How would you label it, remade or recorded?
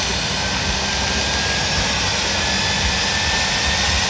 recorded